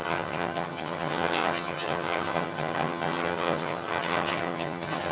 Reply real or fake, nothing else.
fake